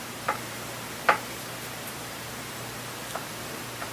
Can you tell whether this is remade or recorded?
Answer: remade